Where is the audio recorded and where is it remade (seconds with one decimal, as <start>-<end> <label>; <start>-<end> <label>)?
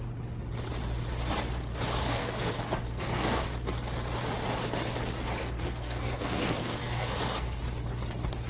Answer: 0.0-2.0 recorded; 2.0-2.5 remade; 2.5-2.9 recorded; 2.9-3.4 remade; 3.4-5.4 recorded; 5.4-7.6 remade; 7.6-8.5 recorded